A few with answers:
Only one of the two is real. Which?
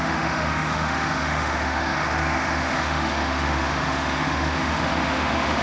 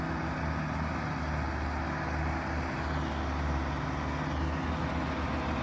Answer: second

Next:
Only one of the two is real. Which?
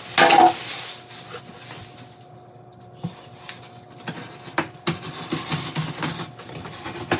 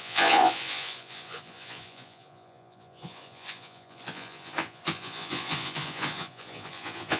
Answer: first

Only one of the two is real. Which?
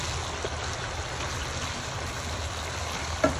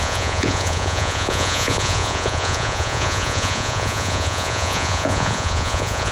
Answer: first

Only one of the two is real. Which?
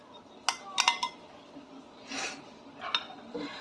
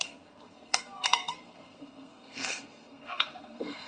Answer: first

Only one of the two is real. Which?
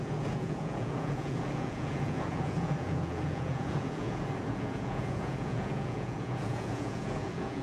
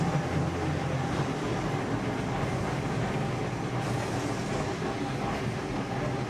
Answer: second